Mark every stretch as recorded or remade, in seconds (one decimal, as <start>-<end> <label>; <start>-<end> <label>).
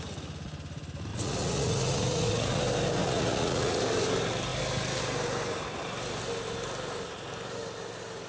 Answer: 0.0-1.1 recorded; 1.1-2.6 remade; 2.6-3.0 recorded; 3.0-3.8 remade; 3.8-8.3 recorded